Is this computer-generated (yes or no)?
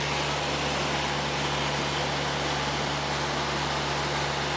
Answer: no